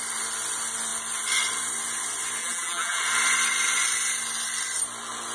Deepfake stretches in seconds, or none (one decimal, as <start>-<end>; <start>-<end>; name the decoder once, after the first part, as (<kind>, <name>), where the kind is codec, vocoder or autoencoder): 2.4-3.0 (vocoder, BigVGAN v2)